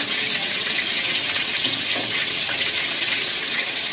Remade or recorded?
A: remade